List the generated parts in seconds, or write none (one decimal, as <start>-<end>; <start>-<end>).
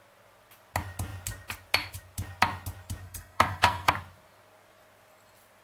3.0-3.9